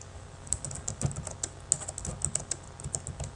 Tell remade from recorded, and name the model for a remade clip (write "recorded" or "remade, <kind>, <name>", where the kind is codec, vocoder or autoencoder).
recorded